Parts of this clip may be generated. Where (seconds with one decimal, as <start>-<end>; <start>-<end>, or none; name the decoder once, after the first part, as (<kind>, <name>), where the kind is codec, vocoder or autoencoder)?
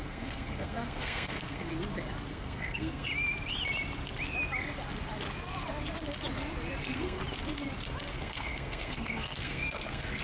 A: 0.0-1.7 (codec, SNAC); 2.3-3.1; 6.8-7.2; 8.1-10.2